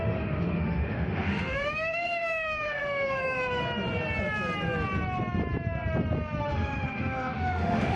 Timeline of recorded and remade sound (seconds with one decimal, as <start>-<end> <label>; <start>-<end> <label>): 0.0-3.6 remade; 3.6-6.4 recorded; 6.4-8.0 remade